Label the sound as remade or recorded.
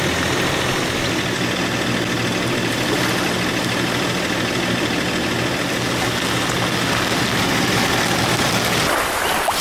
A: recorded